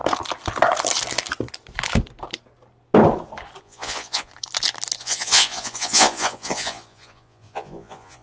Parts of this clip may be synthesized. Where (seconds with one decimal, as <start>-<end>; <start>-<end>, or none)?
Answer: 3.6-4.3; 5.0-8.2